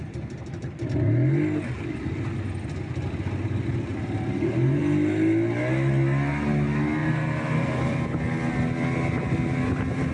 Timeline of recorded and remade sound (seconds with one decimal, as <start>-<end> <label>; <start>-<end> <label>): 0.0-3.9 recorded; 3.9-4.8 remade; 4.8-7.0 recorded; 7.0-7.9 remade; 7.9-10.1 recorded